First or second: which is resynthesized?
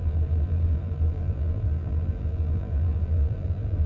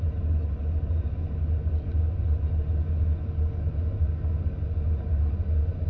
first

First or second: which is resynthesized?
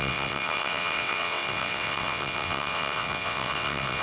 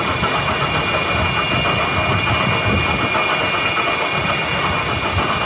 first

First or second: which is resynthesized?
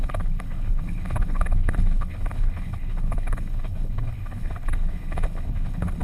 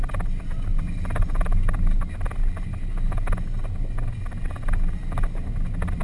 first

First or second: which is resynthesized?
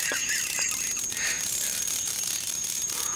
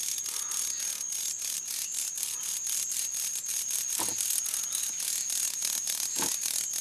first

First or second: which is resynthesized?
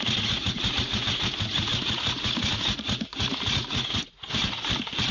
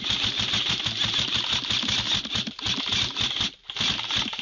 first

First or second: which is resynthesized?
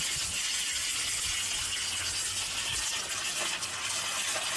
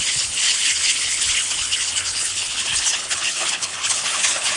second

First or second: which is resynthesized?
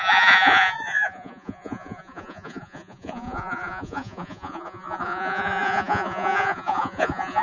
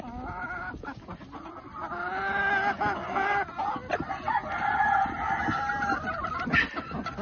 first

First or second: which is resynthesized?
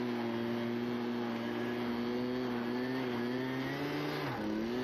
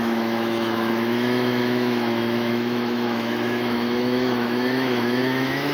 second